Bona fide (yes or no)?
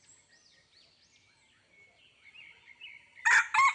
yes